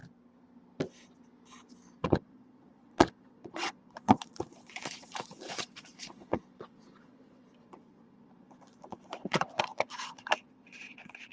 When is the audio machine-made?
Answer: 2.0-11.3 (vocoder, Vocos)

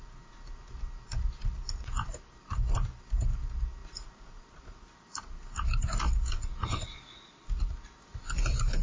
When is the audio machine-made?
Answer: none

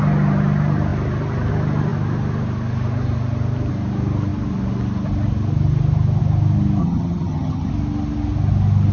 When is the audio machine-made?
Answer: 6.8-7.7 (vocoder, HiFi-GAN)